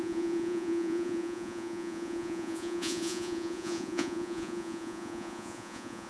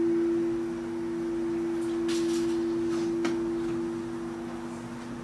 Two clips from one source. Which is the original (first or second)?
second